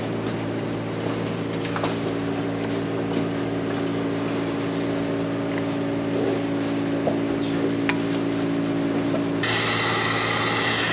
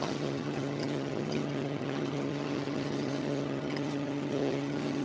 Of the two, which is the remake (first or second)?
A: second